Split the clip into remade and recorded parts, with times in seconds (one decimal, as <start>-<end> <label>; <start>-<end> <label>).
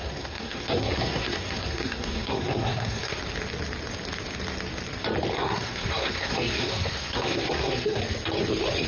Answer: 0.0-3.2 remade; 3.2-5.3 recorded; 5.3-8.0 remade; 8.0-8.9 recorded